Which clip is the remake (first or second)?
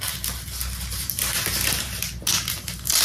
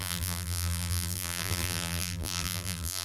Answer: second